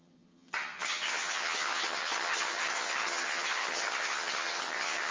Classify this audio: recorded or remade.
remade